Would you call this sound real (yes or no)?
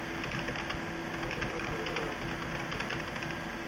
yes